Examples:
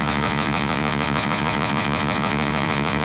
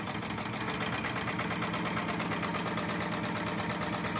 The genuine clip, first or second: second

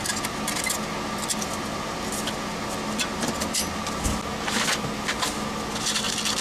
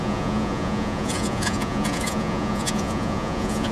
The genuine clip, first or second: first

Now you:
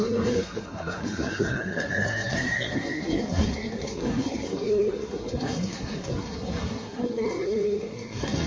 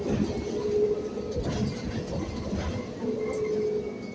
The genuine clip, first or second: second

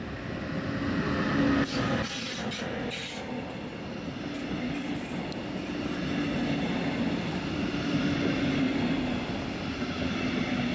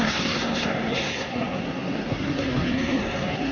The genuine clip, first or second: first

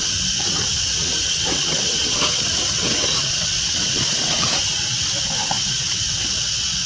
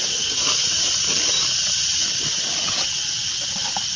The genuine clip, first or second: second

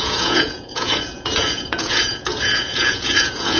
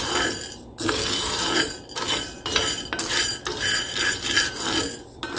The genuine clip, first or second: second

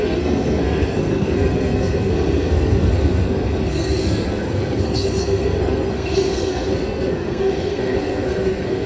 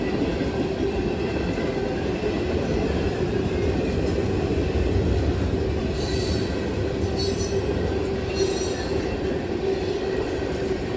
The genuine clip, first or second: second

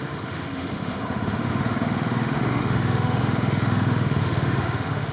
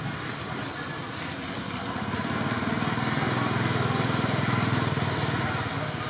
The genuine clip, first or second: second